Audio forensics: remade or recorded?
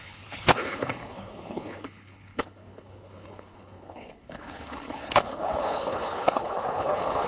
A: remade